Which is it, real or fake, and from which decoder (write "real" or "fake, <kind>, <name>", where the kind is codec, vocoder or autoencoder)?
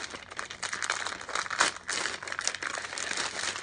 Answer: real